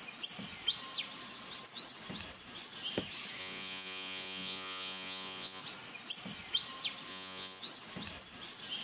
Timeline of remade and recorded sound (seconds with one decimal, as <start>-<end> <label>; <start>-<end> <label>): 0.0-3.4 recorded; 3.4-5.6 remade; 5.6-7.1 recorded; 7.1-7.6 remade; 7.6-8.8 recorded

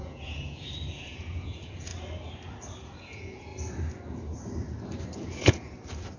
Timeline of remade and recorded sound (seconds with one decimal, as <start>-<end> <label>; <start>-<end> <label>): 0.0-1.9 remade; 1.9-2.8 recorded; 2.8-3.5 remade; 3.5-5.2 recorded; 5.2-6.2 remade

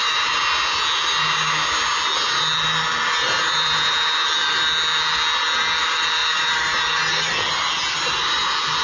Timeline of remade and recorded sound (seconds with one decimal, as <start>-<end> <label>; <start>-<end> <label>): 0.0-8.8 recorded